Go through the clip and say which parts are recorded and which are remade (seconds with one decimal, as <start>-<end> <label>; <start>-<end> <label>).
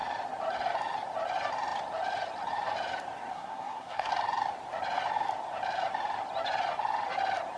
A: 0.0-3.3 recorded; 3.3-4.1 remade; 4.1-7.6 recorded